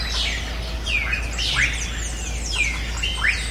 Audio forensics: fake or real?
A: real